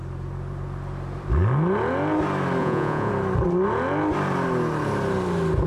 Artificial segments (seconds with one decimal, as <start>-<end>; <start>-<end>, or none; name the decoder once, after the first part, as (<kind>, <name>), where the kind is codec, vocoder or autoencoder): 2.6-3.1 (vocoder, Vocos)